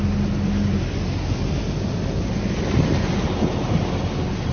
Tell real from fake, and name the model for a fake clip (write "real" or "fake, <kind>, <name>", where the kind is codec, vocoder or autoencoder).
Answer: real